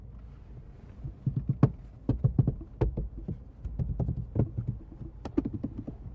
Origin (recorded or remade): recorded